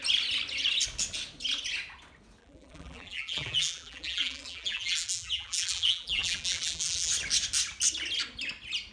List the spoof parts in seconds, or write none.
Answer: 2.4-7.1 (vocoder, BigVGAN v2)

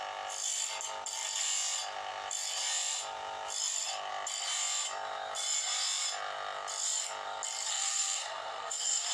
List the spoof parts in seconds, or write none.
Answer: 7.7-9.1 (codec, SNAC)

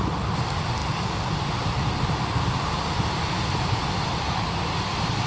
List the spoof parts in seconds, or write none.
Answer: none

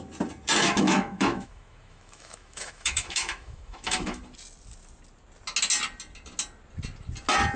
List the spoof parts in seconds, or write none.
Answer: 0.6-4.2 (autoencoder, DAC-VAE)

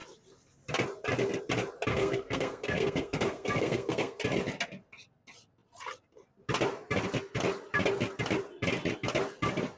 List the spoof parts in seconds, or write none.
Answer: 1.9-4.2 (codec, SNAC)